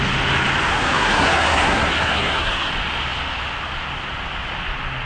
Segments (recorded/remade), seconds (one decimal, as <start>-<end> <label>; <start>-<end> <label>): 0.0-0.7 recorded; 0.7-2.7 remade; 2.7-5.1 recorded